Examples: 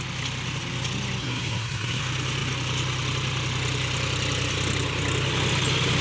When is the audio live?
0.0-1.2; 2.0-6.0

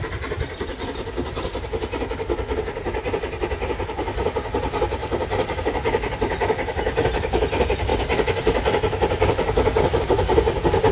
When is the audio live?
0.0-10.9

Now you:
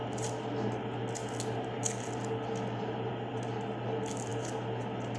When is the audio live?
0.0-5.2

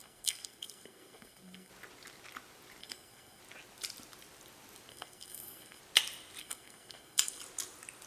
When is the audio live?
1.7-2.8; 3.4-4.9; 5.8-6.4; 7.4-8.1

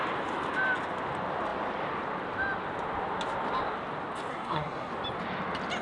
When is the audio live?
0.0-4.3; 4.9-5.8